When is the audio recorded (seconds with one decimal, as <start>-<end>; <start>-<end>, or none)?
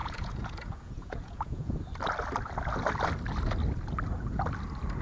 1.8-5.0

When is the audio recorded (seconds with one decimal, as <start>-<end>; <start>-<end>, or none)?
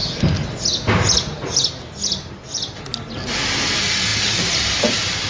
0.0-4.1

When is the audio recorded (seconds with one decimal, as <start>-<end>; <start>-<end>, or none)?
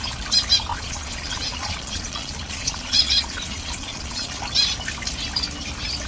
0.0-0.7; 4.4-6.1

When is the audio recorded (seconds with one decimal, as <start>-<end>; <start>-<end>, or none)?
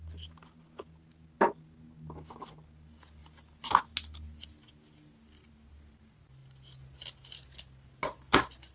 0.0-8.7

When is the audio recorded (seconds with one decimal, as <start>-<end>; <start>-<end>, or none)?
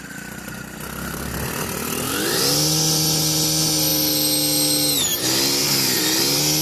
0.0-6.6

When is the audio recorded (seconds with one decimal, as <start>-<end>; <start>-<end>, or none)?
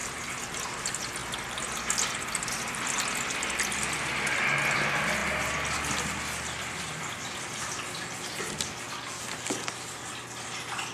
0.7-10.9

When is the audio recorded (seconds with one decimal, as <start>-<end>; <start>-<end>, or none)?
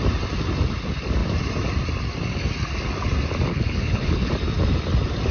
0.0-3.5; 4.3-5.3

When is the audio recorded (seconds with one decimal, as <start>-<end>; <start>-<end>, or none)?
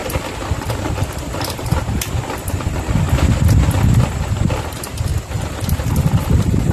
0.0-5.1